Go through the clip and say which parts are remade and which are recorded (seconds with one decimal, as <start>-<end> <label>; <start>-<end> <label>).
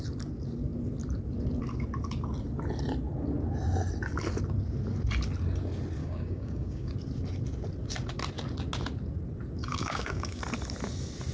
0.0-6.0 recorded; 6.0-6.9 remade; 6.9-9.6 recorded; 9.6-10.4 remade; 10.4-11.3 recorded